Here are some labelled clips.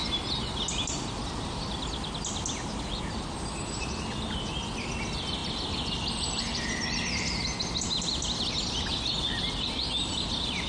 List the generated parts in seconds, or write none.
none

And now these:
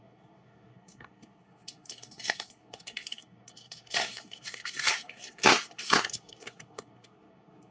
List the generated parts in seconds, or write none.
0.0-7.7 (codec, SNAC)

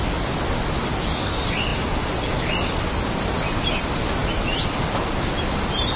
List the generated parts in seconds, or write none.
none

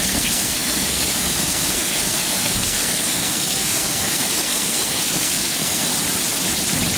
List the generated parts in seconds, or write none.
0.0-5.9 (codec, SNAC)

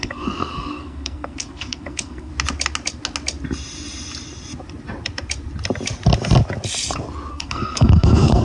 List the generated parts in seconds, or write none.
0.0-2.3 (codec, SNAC); 7.3-8.4

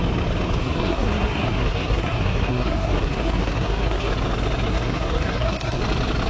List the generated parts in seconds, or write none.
0.6-4.1 (codec, SNAC); 4.7-5.8

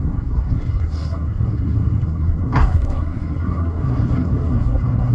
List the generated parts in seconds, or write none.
0.0-5.1 (codec, SNAC)